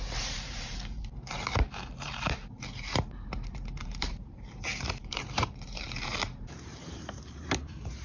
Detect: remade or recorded remade